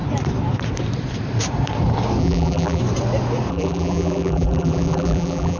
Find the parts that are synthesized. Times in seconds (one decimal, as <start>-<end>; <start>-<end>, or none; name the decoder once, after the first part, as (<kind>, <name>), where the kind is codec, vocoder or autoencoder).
2.2-2.8 (vocoder, BigVGAN v2); 3.5-5.6